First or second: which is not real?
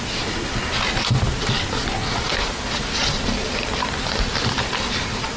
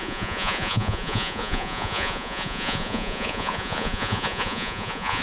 second